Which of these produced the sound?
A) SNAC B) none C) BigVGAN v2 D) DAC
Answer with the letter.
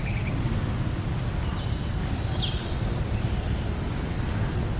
B